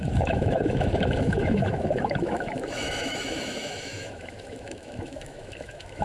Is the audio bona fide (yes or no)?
no